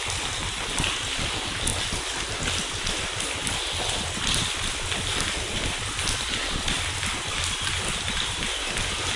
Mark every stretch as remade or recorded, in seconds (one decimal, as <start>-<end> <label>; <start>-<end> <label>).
0.0-9.2 recorded